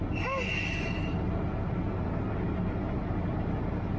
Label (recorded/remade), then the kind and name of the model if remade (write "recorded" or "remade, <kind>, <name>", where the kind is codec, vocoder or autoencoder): recorded